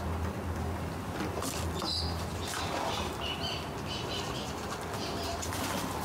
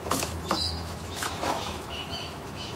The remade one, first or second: second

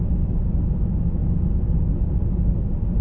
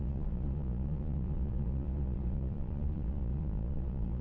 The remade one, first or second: second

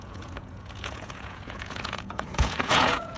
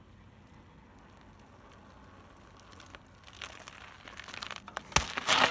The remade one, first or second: first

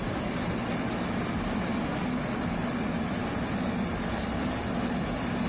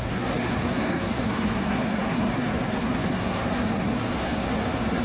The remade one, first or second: second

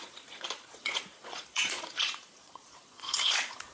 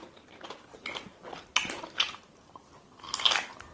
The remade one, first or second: first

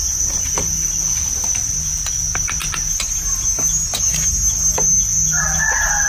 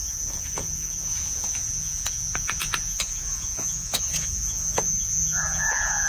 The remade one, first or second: second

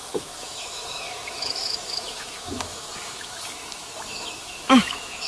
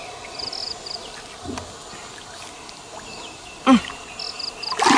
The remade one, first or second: first